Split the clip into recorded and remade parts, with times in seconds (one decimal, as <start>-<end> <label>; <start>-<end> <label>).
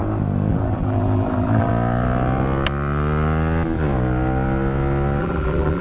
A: 0.0-0.5 recorded; 0.5-1.7 remade; 1.7-5.2 recorded; 5.2-5.8 remade